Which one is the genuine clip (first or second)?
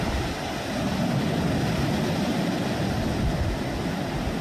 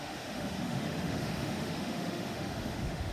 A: first